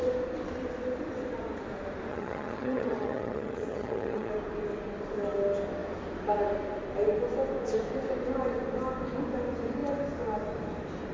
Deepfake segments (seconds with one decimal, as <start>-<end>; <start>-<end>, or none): 2.1-4.3